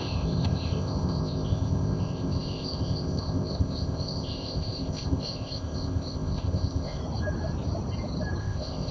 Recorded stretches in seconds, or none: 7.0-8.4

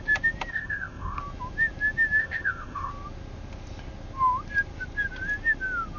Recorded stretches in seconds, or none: 0.0-0.5; 1.2-2.2; 2.9-6.0

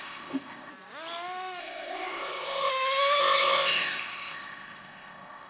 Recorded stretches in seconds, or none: 0.7-1.6; 2.7-3.2

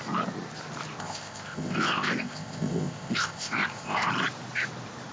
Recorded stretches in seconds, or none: 0.0-1.0; 4.1-5.1

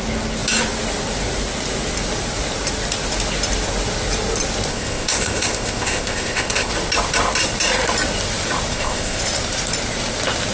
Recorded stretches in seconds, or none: 0.0-4.7; 6.7-8.7; 9.2-10.5

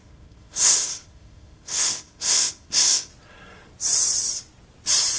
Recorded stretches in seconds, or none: 3.1-5.2